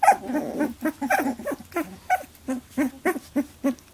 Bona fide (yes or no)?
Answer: yes